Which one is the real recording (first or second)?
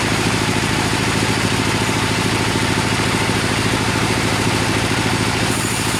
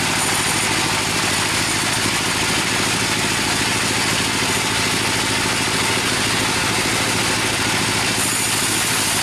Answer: second